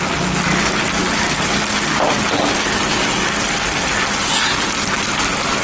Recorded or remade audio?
recorded